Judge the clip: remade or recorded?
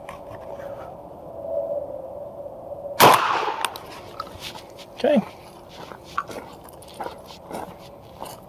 recorded